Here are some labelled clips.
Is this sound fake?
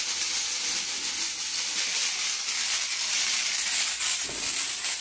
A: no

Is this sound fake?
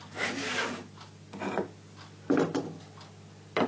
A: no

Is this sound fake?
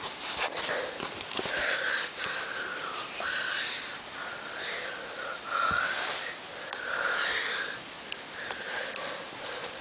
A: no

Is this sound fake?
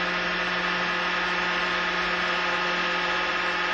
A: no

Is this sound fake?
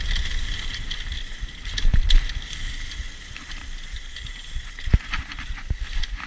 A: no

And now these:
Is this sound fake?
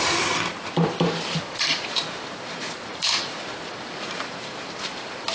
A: yes